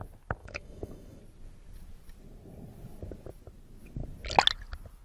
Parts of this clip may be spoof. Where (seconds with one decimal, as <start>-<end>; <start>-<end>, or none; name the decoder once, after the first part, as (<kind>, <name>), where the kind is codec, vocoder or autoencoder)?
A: 0.4-1.2 (autoencoder, DAC-VAE)